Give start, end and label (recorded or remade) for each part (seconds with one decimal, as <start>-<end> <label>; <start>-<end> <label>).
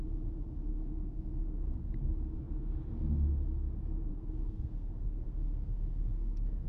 0.0-0.7 recorded; 0.7-1.9 remade; 1.9-4.1 recorded; 4.1-6.7 remade